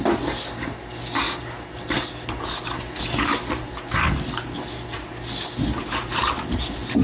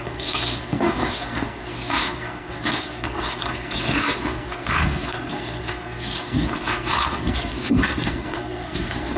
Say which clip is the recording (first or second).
first